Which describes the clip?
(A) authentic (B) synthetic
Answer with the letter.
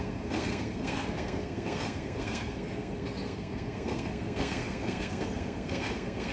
B